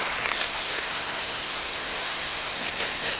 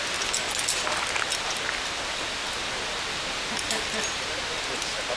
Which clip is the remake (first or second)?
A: first